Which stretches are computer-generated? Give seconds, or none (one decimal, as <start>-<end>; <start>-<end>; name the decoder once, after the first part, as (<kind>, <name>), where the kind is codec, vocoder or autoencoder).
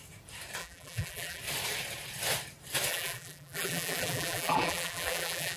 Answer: 0.6-1.4 (vocoder, BigVGAN v2); 2.9-5.6